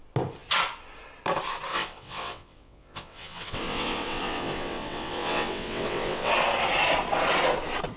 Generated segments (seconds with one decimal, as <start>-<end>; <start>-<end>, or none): 1.7-6.3